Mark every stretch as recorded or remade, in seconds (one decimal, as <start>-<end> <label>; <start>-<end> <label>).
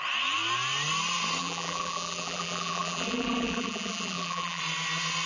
0.0-1.4 recorded; 1.4-4.6 remade; 4.6-5.3 recorded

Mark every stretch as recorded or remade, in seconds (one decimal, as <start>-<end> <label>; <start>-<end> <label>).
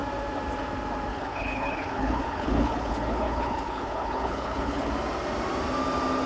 0.0-1.1 recorded; 1.1-4.9 remade; 4.9-6.3 recorded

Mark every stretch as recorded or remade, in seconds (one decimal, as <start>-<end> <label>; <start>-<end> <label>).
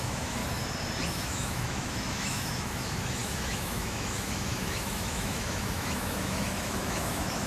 0.0-0.4 remade; 0.4-1.1 recorded; 1.1-7.5 remade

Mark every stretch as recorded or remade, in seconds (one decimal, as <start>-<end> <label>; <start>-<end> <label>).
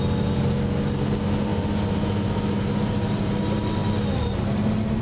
0.0-5.0 recorded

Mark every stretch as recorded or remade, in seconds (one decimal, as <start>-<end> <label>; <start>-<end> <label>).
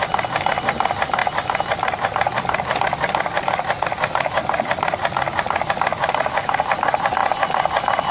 0.0-1.2 recorded; 1.2-5.7 remade; 5.7-7.2 recorded; 7.2-8.1 remade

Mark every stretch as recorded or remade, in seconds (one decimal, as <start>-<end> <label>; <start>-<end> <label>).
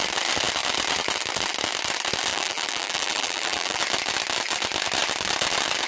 0.0-2.3 recorded; 2.3-3.8 remade; 3.8-5.9 recorded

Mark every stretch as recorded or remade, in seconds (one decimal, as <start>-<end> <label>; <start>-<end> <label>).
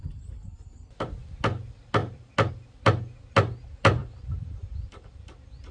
0.0-4.0 recorded; 4.0-5.7 remade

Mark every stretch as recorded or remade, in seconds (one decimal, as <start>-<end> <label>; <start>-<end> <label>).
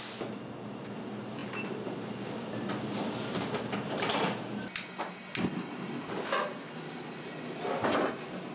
0.0-8.5 recorded